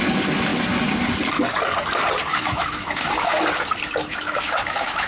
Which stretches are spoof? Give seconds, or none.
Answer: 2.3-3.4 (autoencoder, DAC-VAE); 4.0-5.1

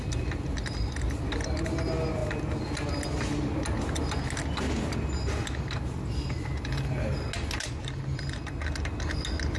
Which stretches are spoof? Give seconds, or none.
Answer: none

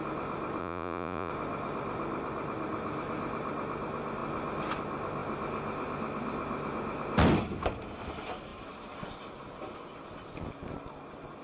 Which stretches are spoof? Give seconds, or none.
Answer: 0.6-1.3 (vocoder, Vocos)

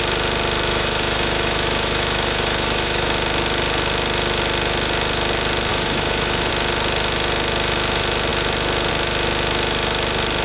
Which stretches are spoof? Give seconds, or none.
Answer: 0.7-3.1 (autoencoder, DAC-VAE); 5.7-6.5

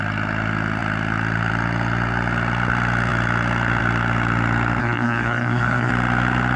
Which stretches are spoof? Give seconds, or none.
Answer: 4.8-5.9 (codec, SNAC)

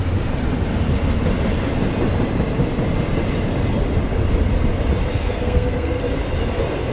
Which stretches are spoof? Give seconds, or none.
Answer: 5.1-6.0 (codec, SNAC)

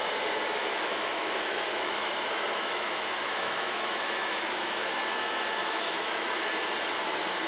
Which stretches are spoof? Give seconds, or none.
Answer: 0.6-5.0 (autoencoder, DAC-VAE); 5.6-6.5